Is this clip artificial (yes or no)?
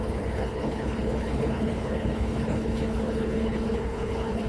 yes